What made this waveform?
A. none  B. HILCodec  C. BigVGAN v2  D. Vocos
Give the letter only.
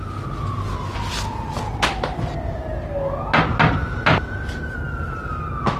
A